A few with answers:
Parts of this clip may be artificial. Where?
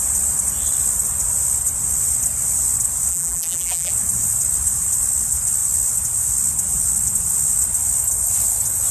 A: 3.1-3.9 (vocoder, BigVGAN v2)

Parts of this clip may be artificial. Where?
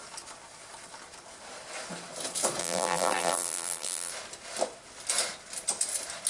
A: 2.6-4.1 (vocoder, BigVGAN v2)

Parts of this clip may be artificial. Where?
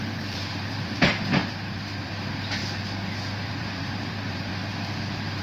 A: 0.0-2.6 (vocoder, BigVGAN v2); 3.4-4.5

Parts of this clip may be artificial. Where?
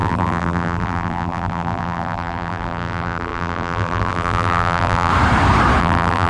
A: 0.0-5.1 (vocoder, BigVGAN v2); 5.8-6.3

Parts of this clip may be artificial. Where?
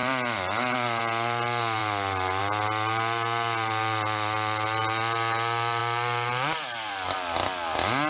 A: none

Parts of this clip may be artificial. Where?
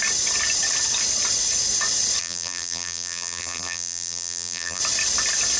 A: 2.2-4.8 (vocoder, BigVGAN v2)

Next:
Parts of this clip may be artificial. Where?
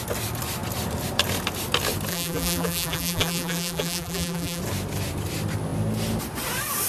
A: 2.1-4.6 (vocoder, BigVGAN v2)